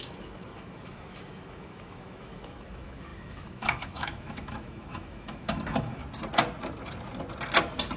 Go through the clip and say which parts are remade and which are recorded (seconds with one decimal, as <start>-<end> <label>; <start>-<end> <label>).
0.0-6.0 remade; 6.0-8.0 recorded